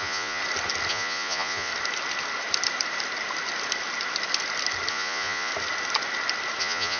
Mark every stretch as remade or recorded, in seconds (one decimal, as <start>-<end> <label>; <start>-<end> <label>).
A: 0.0-0.4 remade; 0.4-0.9 recorded; 0.9-1.7 remade; 1.7-4.9 recorded; 4.9-5.5 remade; 5.5-6.6 recorded; 6.6-7.0 remade